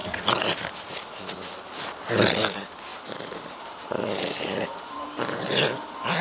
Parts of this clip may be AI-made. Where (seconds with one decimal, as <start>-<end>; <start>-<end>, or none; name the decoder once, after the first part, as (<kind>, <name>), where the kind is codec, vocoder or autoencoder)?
2.9-5.4 (vocoder, BigVGAN v2)